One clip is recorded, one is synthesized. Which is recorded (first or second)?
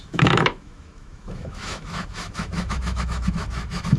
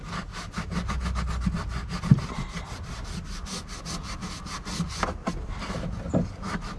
second